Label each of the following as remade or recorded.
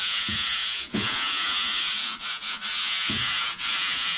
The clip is remade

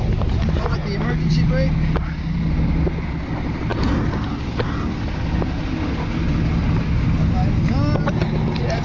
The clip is recorded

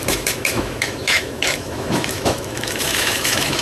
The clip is remade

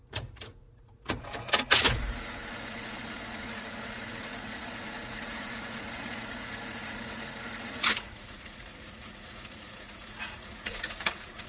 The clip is remade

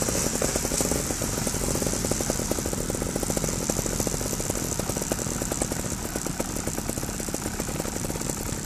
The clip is recorded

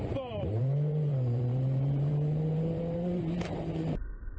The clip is remade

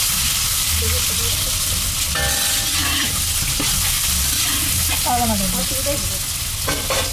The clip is recorded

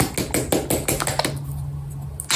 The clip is recorded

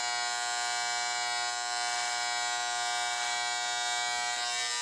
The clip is recorded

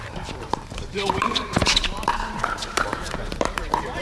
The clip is remade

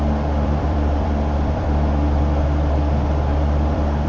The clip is remade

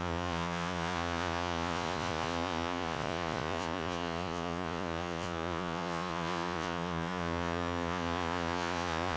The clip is remade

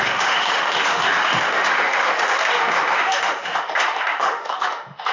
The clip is remade